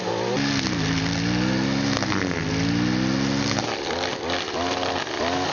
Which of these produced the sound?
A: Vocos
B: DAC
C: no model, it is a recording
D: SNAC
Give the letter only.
C